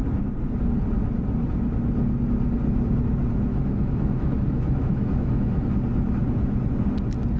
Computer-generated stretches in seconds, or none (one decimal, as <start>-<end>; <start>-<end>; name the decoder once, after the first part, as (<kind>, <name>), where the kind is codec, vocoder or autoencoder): 3.5-5.7 (autoencoder, DAC-VAE)